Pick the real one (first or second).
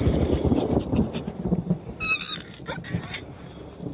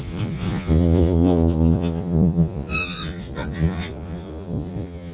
first